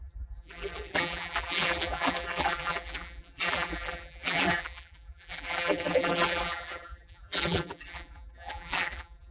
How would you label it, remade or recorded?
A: remade